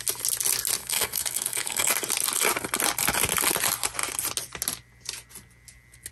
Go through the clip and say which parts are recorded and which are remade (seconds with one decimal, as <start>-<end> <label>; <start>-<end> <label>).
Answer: 0.0-0.8 recorded; 0.8-1.9 remade; 1.9-6.1 recorded